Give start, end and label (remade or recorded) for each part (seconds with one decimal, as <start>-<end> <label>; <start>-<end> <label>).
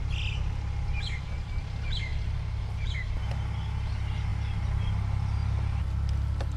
0.0-5.4 recorded; 5.4-5.9 remade; 5.9-6.6 recorded